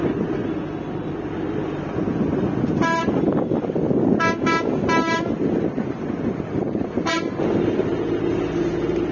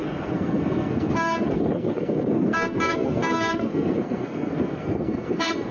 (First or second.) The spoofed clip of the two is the second